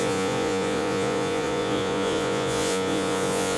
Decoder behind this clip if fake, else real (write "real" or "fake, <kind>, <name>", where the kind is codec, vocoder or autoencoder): fake, vocoder, Vocos